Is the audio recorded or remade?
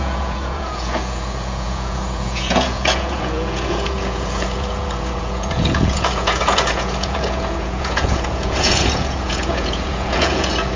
remade